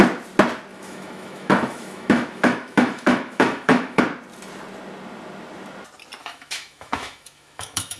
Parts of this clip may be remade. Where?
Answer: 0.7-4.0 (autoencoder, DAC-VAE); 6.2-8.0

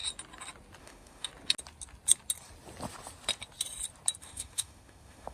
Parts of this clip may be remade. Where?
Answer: 0.8-1.3 (autoencoder, DAC-VAE); 4.2-5.3

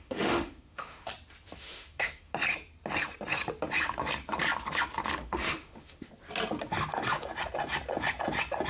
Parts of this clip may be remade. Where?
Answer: 0.0-1.1 (autoencoder, DAC-VAE); 1.6-2.3; 5.2-6.1

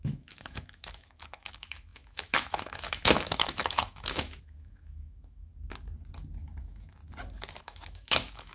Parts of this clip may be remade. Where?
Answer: 0.0-5.5 (autoencoder, DAC-VAE); 6.6-7.0; 7.6-8.5